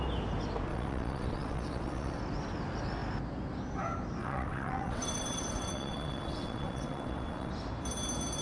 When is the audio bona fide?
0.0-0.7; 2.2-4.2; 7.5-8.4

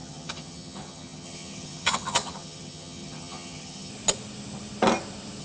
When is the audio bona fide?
3.9-5.4

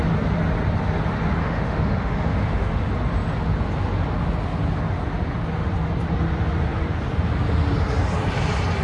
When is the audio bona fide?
0.0-1.4; 2.8-8.8

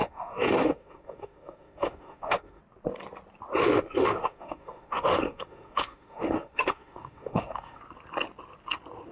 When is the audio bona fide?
2.6-3.6; 7.8-9.1

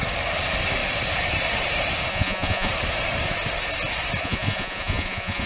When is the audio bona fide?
0.0-2.1; 2.7-4.2